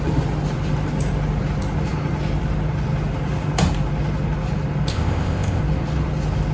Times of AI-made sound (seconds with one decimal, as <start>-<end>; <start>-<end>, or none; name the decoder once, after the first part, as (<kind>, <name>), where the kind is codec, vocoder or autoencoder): 4.9-5.6 (codec, ZipCodec)